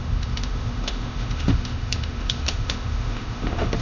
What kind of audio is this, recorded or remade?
remade